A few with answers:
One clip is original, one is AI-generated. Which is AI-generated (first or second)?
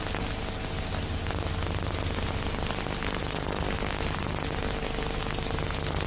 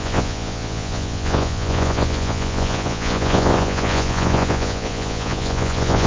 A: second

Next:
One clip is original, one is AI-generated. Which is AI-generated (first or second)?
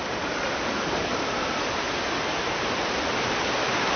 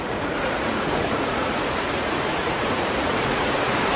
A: second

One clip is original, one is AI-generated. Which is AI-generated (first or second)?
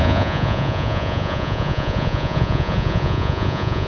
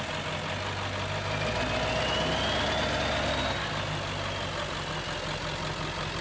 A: first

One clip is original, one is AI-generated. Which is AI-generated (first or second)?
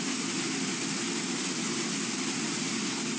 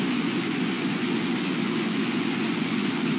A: second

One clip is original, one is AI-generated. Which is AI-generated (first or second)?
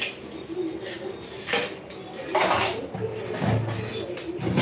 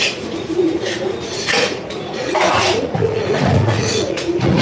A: second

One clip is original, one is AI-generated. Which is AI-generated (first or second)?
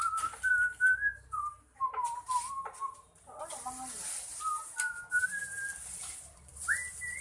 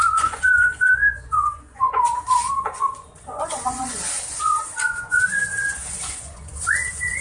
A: second